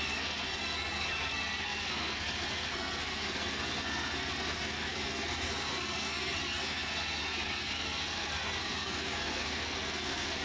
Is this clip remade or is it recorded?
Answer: remade